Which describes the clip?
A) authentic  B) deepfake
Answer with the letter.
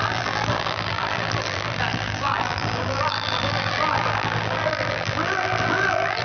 B